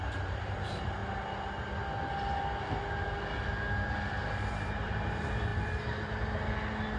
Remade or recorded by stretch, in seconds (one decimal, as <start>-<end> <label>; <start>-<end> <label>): 0.0-1.0 remade; 1.0-4.5 recorded; 4.5-5.5 remade; 5.5-7.0 recorded